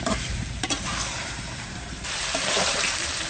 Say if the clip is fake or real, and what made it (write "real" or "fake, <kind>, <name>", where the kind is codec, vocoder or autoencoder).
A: fake, vocoder, BigVGAN v2